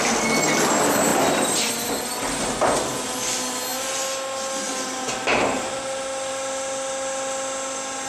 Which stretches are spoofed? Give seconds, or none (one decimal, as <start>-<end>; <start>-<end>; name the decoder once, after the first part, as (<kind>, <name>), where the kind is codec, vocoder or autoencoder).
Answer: none